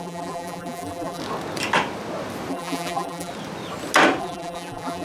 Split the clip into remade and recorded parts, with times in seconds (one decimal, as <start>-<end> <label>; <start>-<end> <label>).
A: 0.0-1.2 remade; 1.2-2.5 recorded; 2.5-3.3 remade; 3.3-4.2 recorded; 4.2-5.0 remade